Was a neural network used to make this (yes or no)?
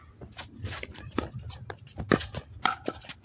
no